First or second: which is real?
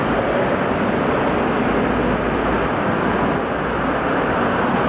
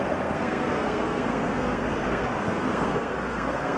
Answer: first